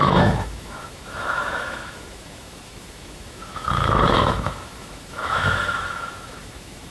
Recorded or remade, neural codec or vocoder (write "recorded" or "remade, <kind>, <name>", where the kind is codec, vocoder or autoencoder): remade, autoencoder, DAC-VAE